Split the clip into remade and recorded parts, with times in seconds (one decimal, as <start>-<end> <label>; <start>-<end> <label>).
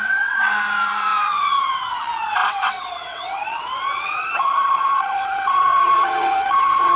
0.0-7.0 remade